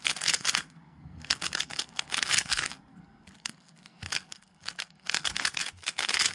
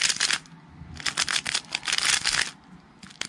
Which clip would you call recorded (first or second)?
second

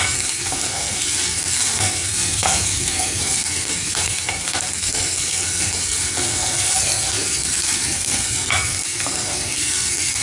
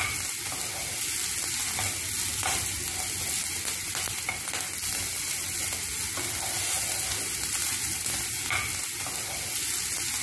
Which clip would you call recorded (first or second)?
second